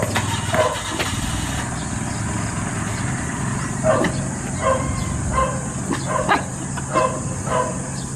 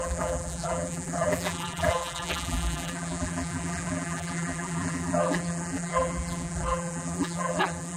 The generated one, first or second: second